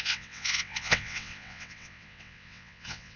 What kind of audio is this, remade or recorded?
remade